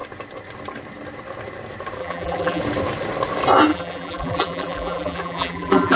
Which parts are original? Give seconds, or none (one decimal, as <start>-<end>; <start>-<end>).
0.0-2.0; 2.6-3.7